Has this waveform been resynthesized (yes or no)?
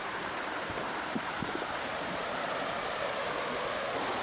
yes